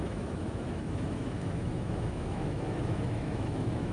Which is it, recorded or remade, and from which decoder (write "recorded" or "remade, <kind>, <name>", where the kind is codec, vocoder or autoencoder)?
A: remade, autoencoder, DAC-VAE